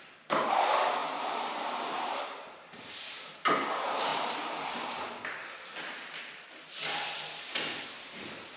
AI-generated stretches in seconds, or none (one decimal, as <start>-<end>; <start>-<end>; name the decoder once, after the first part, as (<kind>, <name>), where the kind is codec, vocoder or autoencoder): 1.0-2.9 (vocoder, BigVGAN v2); 4.1-4.6